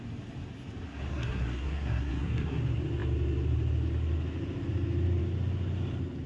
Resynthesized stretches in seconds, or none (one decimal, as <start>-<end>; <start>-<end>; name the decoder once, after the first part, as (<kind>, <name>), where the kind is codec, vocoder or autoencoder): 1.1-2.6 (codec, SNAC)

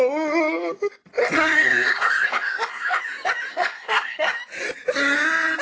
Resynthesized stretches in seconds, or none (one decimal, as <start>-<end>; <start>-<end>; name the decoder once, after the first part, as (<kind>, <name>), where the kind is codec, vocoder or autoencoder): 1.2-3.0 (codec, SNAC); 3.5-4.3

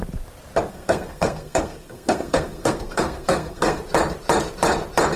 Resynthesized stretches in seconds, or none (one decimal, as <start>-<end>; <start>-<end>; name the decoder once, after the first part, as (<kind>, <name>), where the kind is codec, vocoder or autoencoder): 0.7-3.8 (codec, SNAC)

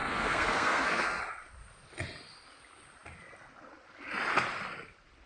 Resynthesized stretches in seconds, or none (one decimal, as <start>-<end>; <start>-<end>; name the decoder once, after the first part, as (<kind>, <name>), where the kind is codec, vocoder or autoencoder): 0.0-1.2 (codec, SNAC)

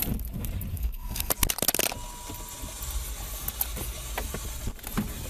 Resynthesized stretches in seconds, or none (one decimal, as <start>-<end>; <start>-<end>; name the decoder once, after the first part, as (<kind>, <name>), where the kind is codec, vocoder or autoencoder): 0.7-1.3 (codec, SNAC)